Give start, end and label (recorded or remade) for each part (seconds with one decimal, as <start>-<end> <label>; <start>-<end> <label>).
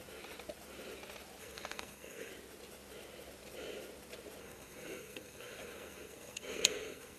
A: 0.0-1.4 recorded; 1.4-2.3 remade; 2.3-4.4 recorded; 4.4-7.2 remade